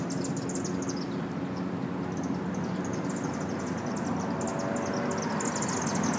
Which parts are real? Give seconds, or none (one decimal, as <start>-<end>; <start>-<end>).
0.0-6.2